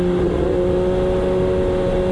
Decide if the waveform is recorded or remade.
recorded